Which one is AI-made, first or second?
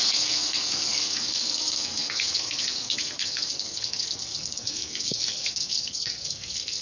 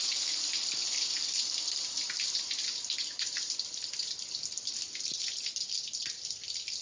first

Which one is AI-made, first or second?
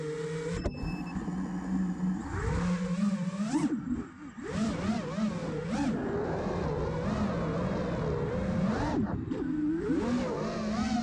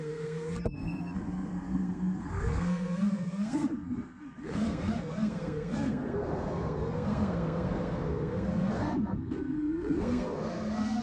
second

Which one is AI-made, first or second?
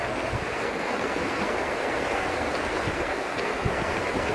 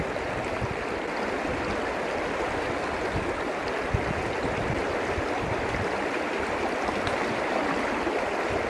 first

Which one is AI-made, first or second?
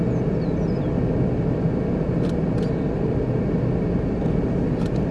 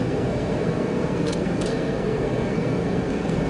second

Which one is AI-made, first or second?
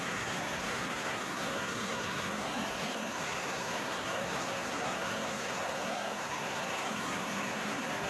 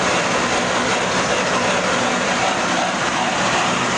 first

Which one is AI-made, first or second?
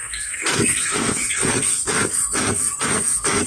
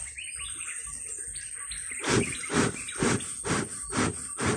first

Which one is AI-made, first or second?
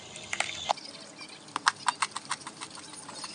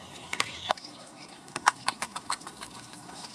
second